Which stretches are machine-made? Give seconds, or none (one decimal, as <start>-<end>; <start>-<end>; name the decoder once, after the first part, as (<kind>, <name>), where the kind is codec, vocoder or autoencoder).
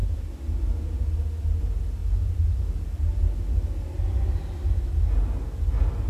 none